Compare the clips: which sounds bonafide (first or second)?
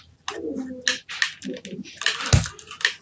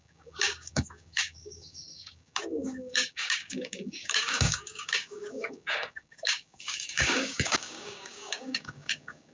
first